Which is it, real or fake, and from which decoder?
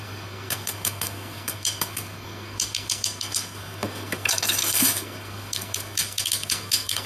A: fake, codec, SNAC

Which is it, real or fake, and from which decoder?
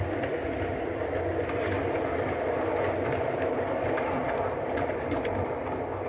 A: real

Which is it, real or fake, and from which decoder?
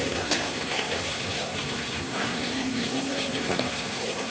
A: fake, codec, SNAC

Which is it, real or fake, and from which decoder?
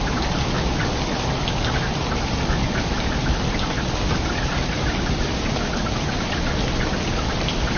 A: real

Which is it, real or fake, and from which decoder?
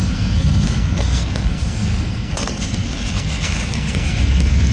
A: fake, codec, SNAC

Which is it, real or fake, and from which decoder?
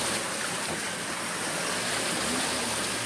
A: real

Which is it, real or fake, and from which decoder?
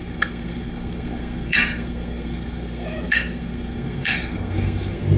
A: fake, codec, SNAC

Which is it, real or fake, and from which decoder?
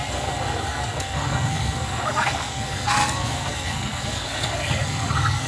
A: fake, codec, SNAC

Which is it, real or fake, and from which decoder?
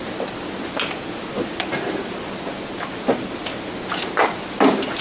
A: real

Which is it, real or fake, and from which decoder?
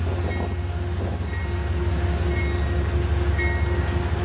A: real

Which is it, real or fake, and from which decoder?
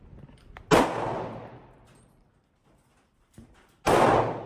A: real